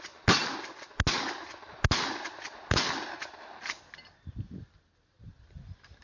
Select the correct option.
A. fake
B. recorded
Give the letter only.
B